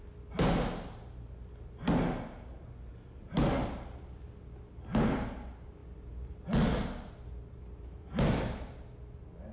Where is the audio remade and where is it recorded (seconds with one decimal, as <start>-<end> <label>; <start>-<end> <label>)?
0.0-9.5 recorded